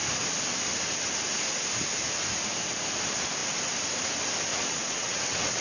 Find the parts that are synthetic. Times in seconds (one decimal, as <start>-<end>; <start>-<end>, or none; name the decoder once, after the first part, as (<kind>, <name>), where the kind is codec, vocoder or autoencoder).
4.5-5.6 (vocoder, WaveNeXt)

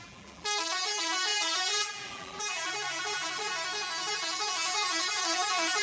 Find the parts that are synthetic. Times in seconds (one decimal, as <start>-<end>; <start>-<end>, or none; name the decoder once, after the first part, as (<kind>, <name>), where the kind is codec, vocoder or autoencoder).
0.0-3.5 (vocoder, BigVGAN v2); 4.1-5.8

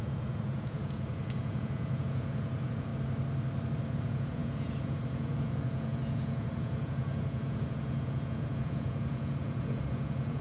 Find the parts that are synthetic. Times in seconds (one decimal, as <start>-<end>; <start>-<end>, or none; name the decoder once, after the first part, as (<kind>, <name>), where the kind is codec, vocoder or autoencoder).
0.0-2.9 (vocoder, Vocos); 3.9-10.4